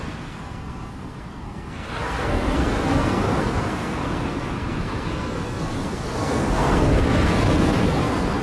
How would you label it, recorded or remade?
remade